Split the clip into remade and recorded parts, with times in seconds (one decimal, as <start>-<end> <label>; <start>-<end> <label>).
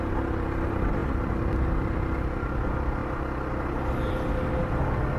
0.0-5.2 recorded